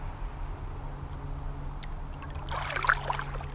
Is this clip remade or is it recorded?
recorded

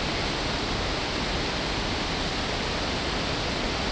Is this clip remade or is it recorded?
recorded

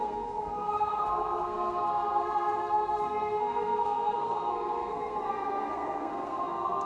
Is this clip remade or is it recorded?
remade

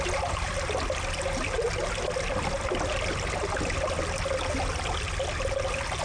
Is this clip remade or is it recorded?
recorded